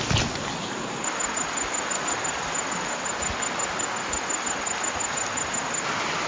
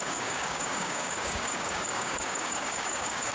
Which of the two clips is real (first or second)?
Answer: first